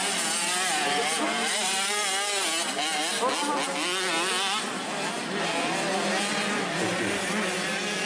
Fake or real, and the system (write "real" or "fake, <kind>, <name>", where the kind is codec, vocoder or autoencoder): real